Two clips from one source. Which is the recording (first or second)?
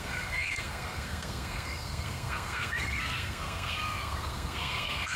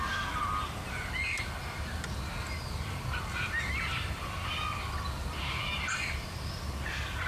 second